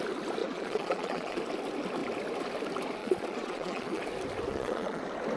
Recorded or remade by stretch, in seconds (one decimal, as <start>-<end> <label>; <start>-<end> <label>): 0.0-0.4 recorded; 0.4-1.4 remade; 1.4-3.0 recorded; 3.0-4.0 remade; 4.0-4.5 recorded; 4.5-5.0 remade; 5.0-5.4 recorded